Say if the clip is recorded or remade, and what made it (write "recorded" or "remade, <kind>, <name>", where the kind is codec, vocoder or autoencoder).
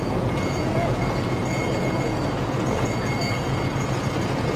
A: remade, vocoder, Vocos